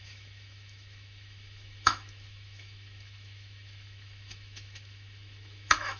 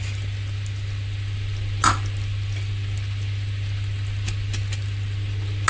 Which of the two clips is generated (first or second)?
first